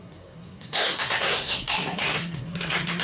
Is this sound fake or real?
fake